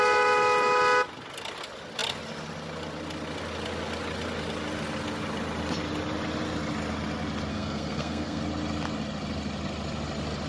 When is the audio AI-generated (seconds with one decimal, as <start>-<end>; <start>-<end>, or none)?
7.5-8.4